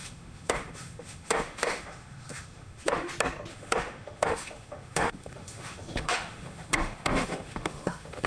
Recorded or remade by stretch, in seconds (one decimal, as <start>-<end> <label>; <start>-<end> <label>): 0.0-3.1 remade; 3.1-3.5 recorded; 3.5-8.3 remade